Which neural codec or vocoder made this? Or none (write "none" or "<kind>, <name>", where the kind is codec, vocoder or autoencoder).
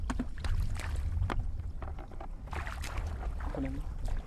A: none